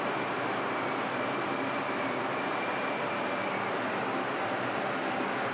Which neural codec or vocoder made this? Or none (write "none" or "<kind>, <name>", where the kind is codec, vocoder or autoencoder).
none